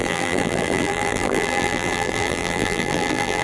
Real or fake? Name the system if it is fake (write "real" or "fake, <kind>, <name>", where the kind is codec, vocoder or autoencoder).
fake, vocoder, BigVGAN v2